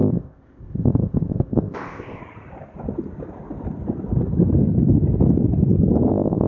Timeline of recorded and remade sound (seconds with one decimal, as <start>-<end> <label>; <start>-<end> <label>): 0.0-2.2 remade; 2.2-6.1 recorded; 6.1-6.5 remade

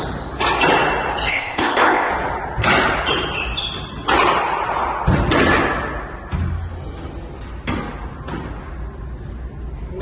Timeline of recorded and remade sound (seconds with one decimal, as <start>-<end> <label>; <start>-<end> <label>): 0.0-1.3 recorded; 1.3-2.1 remade; 2.1-10.0 recorded

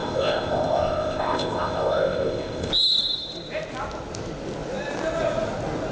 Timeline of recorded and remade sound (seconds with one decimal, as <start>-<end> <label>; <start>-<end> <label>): 0.0-2.7 remade; 2.7-5.9 recorded

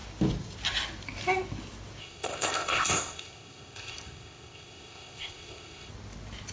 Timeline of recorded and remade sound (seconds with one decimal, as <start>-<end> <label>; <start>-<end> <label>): 0.0-2.0 recorded; 2.0-5.9 remade; 5.9-6.5 recorded

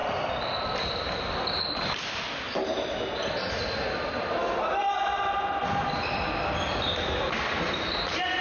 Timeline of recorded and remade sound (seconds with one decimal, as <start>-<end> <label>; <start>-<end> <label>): 0.0-8.4 recorded

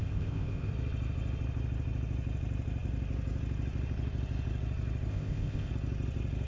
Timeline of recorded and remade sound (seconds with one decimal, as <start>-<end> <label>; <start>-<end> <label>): 0.0-0.7 remade; 0.7-5.1 recorded; 5.1-5.7 remade; 5.7-6.5 recorded

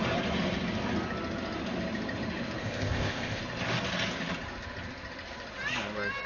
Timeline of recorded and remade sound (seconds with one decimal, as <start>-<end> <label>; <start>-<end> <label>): 0.0-2.6 recorded; 2.6-3.4 remade; 3.4-6.3 recorded

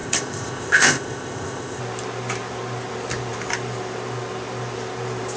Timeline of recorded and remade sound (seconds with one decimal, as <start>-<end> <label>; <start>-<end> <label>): 0.0-1.8 remade; 1.8-5.4 recorded